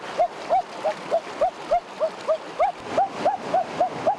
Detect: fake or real real